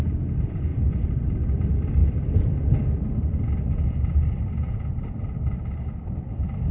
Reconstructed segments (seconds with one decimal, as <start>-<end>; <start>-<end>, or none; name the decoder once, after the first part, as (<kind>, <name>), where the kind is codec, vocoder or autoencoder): 0.0-6.7 (vocoder, BigVGAN v2)